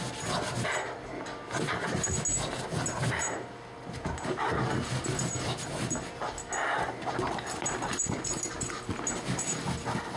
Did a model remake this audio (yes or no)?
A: no